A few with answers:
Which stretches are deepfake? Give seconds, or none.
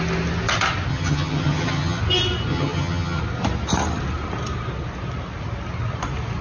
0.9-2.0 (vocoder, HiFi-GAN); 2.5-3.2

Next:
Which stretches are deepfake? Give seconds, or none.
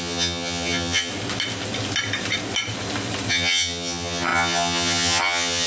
0.0-1.1 (vocoder, HiFi-GAN); 3.3-5.7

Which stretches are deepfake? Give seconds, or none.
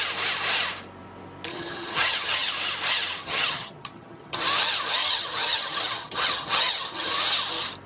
1.5-2.5 (vocoder, HiFi-GAN); 3.2-4.4; 5.0-7.1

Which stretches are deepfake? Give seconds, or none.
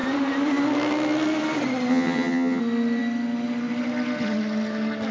1.9-2.6 (vocoder, HiFi-GAN)